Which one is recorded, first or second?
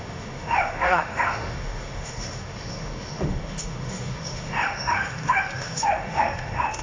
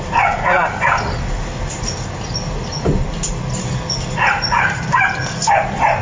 second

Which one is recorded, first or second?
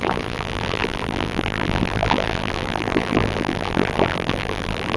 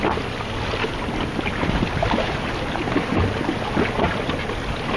second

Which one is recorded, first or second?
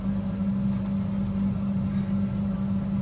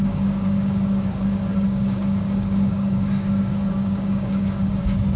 first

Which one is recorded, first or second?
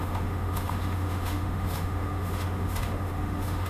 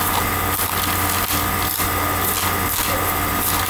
second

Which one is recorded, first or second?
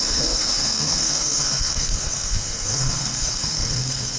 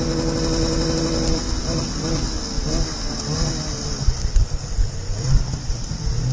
second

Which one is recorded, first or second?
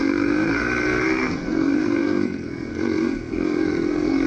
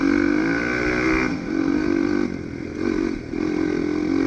second